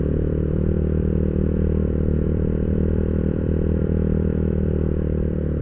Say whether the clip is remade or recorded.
remade